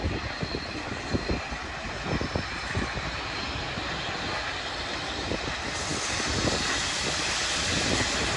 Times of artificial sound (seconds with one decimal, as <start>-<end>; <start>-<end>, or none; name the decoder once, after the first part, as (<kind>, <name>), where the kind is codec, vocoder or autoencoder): none